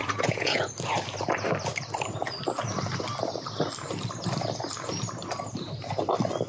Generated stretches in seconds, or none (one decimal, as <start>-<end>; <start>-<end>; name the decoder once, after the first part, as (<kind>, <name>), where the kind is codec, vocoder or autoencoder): 0.0-0.7 (vocoder, Vocos)

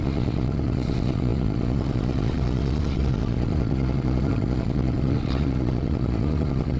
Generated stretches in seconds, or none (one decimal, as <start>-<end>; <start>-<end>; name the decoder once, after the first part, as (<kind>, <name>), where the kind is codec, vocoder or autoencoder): 0.0-6.8 (vocoder, Vocos)

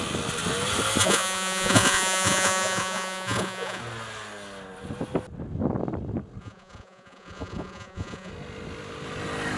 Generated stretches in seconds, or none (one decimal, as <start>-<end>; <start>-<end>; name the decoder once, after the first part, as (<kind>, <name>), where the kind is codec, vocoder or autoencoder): 1.0-3.8 (vocoder, Vocos); 6.4-8.3

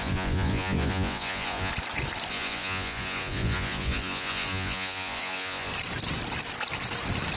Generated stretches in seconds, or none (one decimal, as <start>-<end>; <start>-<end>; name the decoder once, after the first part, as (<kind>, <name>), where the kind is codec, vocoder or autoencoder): 0.0-1.7 (vocoder, Vocos); 2.3-5.7

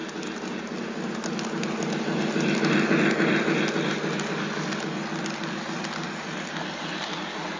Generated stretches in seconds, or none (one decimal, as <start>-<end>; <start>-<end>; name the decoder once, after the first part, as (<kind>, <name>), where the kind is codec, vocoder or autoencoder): none

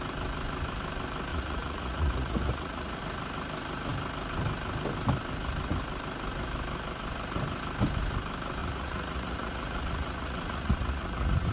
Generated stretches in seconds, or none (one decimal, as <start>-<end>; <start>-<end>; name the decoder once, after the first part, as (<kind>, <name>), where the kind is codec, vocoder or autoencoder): 1.3-3.0 (vocoder, Vocos); 8.6-11.5

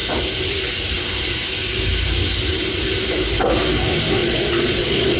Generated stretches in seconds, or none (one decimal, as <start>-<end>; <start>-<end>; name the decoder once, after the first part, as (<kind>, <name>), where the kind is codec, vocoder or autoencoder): 4.2-5.2 (vocoder, Vocos)

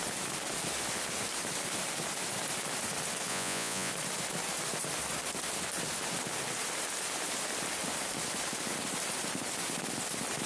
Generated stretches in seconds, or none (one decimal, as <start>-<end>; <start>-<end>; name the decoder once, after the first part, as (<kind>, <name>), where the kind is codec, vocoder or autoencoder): 3.3-3.9 (vocoder, Vocos)